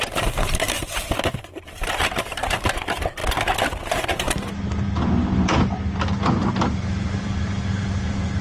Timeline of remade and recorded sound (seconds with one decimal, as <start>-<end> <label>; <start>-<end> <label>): 0.0-0.8 remade; 0.8-1.4 recorded; 1.4-3.2 remade; 3.2-6.5 recorded; 6.5-8.4 remade